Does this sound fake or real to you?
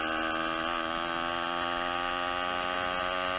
real